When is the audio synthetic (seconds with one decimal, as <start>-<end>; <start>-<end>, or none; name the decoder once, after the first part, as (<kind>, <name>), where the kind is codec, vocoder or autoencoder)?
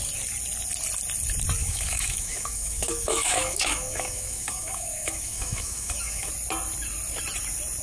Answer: 1.6-6.3 (autoencoder, DAC-VAE)